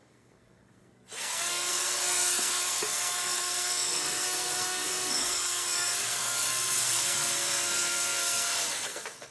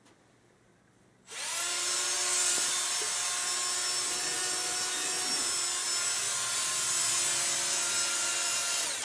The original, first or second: second